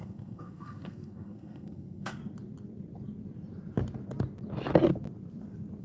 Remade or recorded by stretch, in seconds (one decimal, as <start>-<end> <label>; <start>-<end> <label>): 0.0-2.2 remade; 2.2-5.8 recorded